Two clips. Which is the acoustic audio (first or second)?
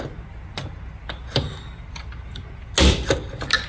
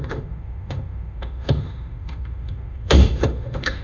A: first